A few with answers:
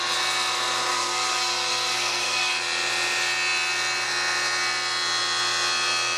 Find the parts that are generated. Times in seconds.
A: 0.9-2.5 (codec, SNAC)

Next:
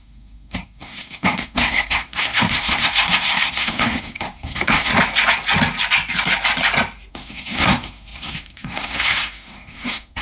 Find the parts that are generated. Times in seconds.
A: 0.0-4.9 (codec, SNAC); 7.1-10.2